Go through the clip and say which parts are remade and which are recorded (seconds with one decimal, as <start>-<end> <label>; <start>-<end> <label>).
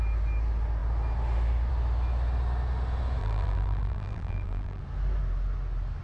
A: 0.0-3.2 recorded; 3.2-4.8 remade; 4.8-6.0 recorded